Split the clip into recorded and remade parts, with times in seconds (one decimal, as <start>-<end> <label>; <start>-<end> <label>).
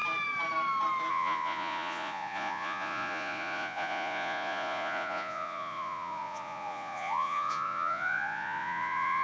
0.0-1.1 recorded; 1.1-9.2 remade